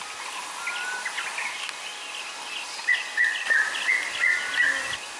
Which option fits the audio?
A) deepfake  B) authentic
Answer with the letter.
B